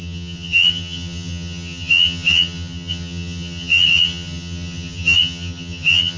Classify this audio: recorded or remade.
remade